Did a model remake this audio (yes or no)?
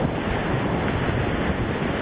no